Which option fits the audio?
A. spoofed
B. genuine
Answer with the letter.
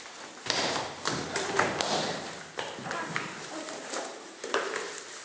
B